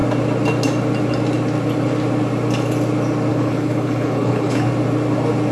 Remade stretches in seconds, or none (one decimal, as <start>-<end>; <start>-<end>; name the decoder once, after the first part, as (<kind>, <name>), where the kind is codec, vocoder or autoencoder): 3.3-4.7 (codec, HILCodec)